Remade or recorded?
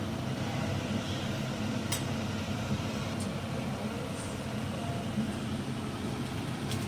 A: recorded